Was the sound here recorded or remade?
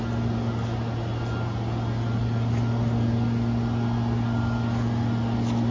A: recorded